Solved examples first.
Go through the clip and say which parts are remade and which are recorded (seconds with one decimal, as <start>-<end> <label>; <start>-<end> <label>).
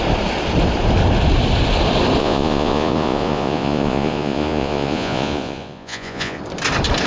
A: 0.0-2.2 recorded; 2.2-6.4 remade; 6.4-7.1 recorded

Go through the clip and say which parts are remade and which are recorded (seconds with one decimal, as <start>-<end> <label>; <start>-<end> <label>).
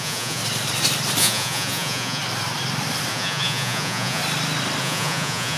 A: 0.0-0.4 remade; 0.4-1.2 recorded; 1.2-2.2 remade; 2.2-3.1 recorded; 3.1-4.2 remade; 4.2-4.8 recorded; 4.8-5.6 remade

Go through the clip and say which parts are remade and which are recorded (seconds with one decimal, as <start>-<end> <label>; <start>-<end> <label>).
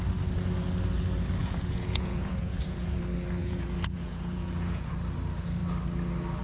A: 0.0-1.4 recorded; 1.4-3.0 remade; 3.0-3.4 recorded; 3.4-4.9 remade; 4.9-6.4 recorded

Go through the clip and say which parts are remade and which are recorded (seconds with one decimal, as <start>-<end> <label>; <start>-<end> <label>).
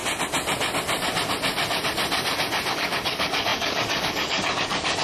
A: 0.0-2.7 recorded; 2.7-5.0 remade